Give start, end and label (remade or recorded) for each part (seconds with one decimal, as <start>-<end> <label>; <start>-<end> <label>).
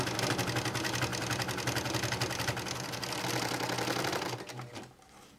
0.0-5.4 recorded